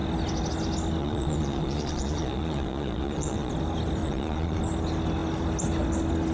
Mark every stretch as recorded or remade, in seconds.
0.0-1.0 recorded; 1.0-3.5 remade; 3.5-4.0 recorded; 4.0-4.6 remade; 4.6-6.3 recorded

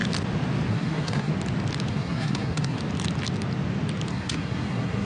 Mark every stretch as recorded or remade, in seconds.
0.0-0.7 recorded; 0.7-1.3 remade; 1.3-1.9 recorded; 1.9-2.8 remade; 2.8-4.1 recorded; 4.1-5.1 remade

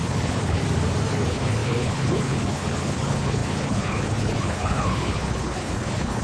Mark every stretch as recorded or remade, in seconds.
0.0-0.6 remade; 0.6-1.1 recorded; 1.1-6.2 remade

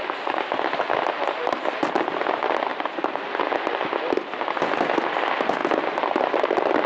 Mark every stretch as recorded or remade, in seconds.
0.0-6.9 recorded

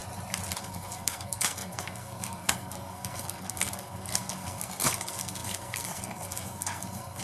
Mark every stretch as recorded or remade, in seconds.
0.0-0.6 recorded; 0.6-7.2 remade

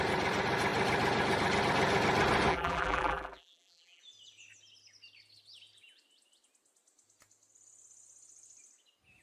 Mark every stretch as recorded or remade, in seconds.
0.0-2.5 recorded; 2.5-4.0 remade; 4.0-9.2 recorded

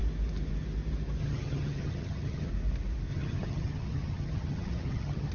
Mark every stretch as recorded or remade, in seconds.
0.0-1.2 recorded; 1.2-2.5 remade; 2.5-3.1 recorded; 3.1-5.3 remade